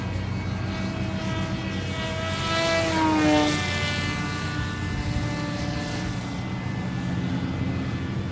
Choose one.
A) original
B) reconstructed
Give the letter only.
A